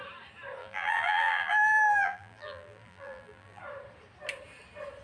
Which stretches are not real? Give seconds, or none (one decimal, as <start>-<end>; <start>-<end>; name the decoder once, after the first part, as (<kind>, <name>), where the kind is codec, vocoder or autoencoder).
0.6-3.6 (vocoder, BigVGAN v2)